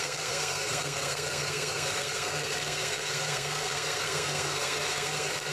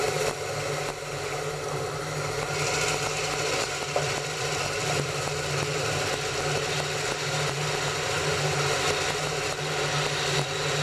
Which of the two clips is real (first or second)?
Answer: second